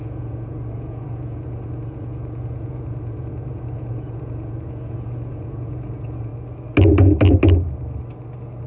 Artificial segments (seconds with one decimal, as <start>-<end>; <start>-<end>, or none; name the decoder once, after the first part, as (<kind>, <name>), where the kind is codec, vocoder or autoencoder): 0.0-6.3 (vocoder, Vocos)